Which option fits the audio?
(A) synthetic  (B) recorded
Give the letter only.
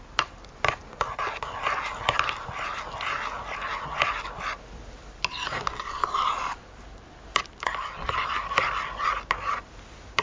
B